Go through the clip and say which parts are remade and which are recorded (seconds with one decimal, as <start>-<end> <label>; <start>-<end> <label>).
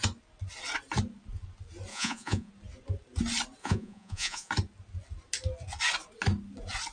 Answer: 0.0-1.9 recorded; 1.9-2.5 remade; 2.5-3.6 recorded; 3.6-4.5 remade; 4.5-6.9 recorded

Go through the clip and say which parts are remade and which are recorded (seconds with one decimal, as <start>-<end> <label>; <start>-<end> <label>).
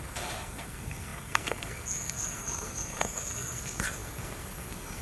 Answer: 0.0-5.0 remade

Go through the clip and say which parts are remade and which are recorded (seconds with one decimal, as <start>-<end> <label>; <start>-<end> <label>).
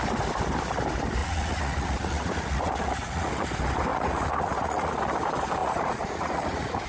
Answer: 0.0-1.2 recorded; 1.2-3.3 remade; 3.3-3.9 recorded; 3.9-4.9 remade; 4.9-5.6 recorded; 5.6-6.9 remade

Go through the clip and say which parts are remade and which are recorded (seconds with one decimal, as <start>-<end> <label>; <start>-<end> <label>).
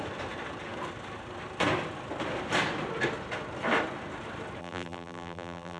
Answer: 0.0-4.6 recorded; 4.6-5.8 remade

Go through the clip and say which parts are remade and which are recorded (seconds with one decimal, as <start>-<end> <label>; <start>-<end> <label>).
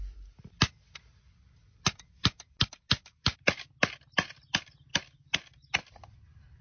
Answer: 0.0-6.6 recorded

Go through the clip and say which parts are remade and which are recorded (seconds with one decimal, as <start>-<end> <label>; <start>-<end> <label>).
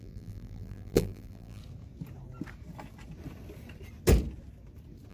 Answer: 0.0-1.6 remade; 1.6-5.1 recorded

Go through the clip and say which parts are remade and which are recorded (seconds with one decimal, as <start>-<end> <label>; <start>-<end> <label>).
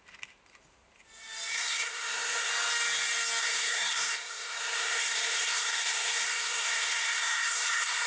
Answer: 0.0-1.5 recorded; 1.5-2.5 remade; 2.5-3.4 recorded; 3.4-8.1 remade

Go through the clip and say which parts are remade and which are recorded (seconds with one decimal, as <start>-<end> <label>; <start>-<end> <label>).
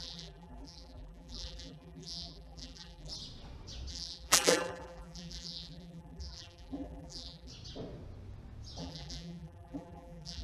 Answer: 0.0-3.1 remade; 3.1-3.9 recorded; 3.9-7.5 remade; 7.5-8.8 recorded; 8.8-10.4 remade